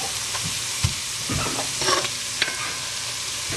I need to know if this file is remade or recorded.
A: remade